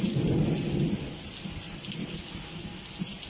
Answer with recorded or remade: recorded